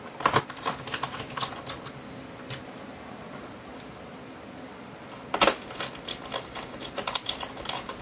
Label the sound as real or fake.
real